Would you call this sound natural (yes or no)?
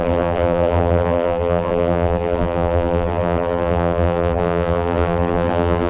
no